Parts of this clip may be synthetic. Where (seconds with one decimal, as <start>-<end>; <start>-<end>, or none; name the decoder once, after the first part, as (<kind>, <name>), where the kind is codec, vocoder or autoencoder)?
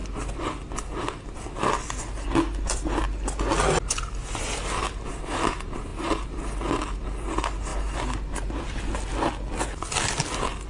none